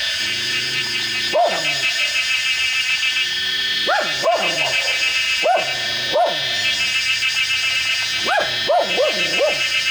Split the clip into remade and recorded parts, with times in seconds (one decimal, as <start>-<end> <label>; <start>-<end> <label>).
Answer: 0.0-0.8 remade; 0.8-1.5 recorded; 1.5-2.4 remade; 2.4-4.4 recorded; 4.4-6.6 remade; 6.6-7.8 recorded; 7.8-9.9 remade